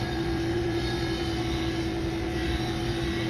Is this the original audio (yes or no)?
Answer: no